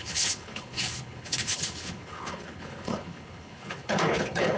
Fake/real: fake